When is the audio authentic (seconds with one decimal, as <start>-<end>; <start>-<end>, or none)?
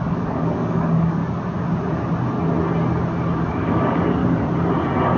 1.2-3.5; 4.2-5.2